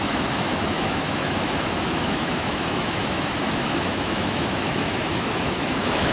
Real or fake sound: fake